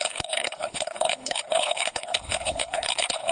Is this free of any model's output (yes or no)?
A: no